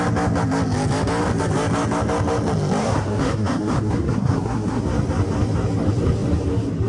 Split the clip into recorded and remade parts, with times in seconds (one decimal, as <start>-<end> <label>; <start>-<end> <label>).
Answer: 0.0-2.8 recorded; 2.8-4.8 remade; 4.8-6.9 recorded